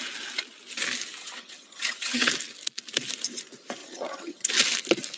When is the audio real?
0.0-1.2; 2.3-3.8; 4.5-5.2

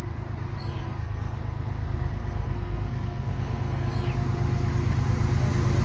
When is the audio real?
0.0-0.6; 4.1-5.8

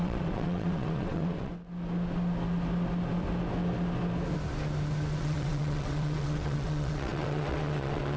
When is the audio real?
1.5-5.2

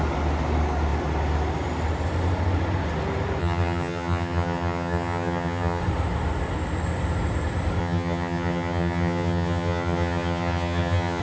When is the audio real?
0.0-3.4; 5.8-7.8

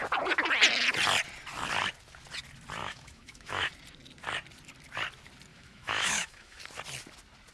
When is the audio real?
0.0-2.8; 3.7-5.5; 6.6-7.5

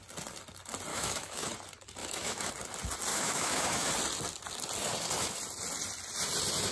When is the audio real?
0.0-0.9; 1.5-2.0; 2.5-3.1; 3.9-6.7

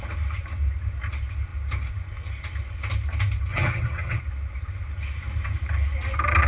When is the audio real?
0.0-3.5; 4.2-6.5